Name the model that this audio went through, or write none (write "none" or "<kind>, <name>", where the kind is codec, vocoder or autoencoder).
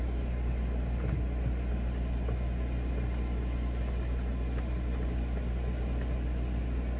none